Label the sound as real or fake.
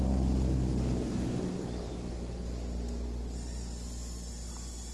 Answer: real